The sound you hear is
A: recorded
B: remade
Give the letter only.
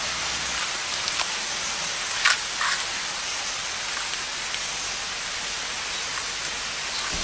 A